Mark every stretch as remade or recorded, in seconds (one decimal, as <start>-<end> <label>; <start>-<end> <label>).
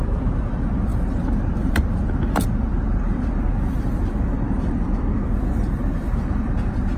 0.0-7.0 remade